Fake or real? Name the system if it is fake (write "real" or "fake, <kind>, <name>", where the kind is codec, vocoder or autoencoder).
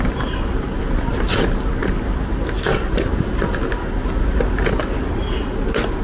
real